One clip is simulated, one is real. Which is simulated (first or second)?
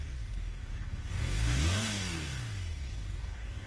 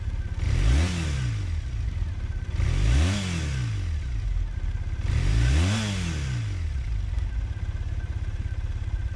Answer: first